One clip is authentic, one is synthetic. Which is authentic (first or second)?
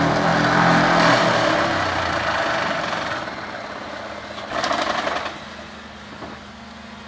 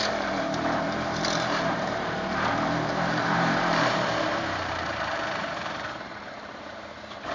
first